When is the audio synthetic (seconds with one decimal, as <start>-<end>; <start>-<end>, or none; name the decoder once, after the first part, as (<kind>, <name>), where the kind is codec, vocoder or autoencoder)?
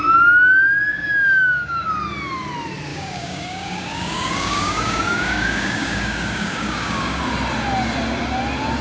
0.9-1.9 (codec, DAC); 2.9-7.2